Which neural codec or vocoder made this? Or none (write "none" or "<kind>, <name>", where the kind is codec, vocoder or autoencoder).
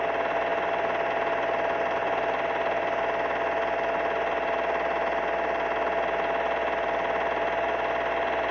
none